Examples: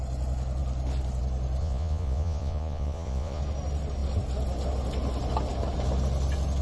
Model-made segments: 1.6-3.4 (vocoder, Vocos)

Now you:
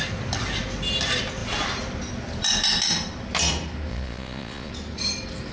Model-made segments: 3.9-4.7 (vocoder, Vocos)

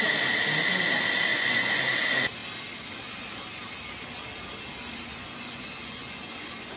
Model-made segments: 1.3-1.8 (vocoder, Vocos); 5.1-6.8

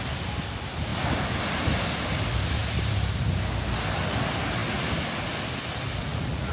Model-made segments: 6.0-6.5 (vocoder, Vocos)

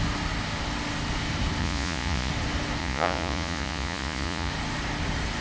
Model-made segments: 1.6-2.3 (vocoder, Vocos); 2.8-4.5

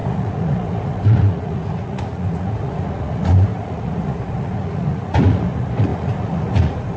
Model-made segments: 0.0-7.0 (vocoder, Vocos)

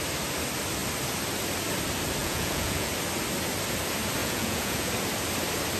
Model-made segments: 2.2-2.9 (vocoder, Vocos); 4.2-4.9